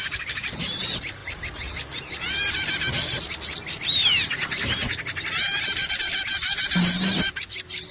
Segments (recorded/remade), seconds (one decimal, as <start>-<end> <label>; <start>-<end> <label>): 0.0-7.9 recorded